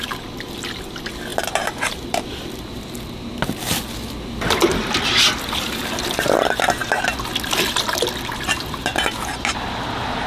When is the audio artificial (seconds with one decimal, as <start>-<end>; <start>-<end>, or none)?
1.3-2.6